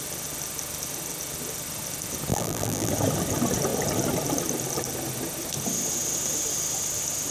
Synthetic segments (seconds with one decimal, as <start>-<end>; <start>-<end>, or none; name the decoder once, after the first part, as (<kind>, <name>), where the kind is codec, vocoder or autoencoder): 2.3-2.9 (vocoder, BigVGAN v2)